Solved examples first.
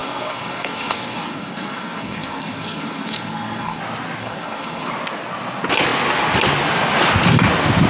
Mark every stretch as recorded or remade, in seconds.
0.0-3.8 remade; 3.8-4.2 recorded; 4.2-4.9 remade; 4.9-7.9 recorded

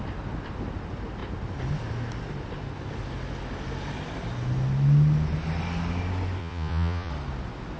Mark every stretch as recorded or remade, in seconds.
0.0-6.4 recorded; 6.4-7.1 remade; 7.1-7.8 recorded

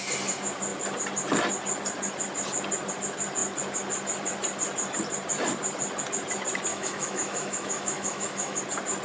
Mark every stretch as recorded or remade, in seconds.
0.0-6.7 recorded; 6.7-8.6 remade; 8.6-9.0 recorded

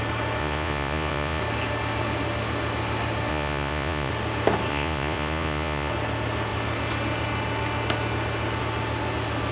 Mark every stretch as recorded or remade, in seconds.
0.0-0.4 recorded; 0.4-1.4 remade; 1.4-3.3 recorded; 3.3-4.1 remade; 4.1-4.7 recorded; 4.7-5.9 remade; 5.9-9.5 recorded

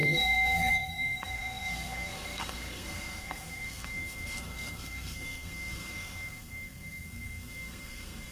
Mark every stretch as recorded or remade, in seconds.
0.0-8.3 remade

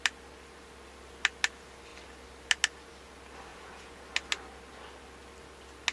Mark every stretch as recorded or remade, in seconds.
0.0-3.5 recorded; 3.5-4.0 remade; 4.0-5.9 recorded

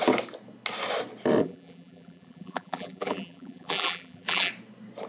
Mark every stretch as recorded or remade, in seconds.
0.0-1.4 recorded; 1.4-4.5 remade; 4.5-5.1 recorded

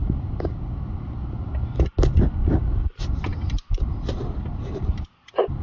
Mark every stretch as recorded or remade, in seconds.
0.0-3.3 recorded; 3.3-5.6 remade